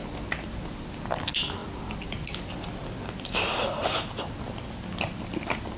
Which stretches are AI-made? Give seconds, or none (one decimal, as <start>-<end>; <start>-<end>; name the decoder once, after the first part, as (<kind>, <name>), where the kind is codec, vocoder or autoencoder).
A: none